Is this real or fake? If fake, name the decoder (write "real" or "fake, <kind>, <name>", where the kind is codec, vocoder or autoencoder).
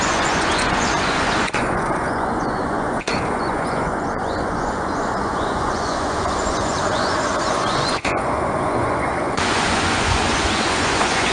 fake, vocoder, Vocos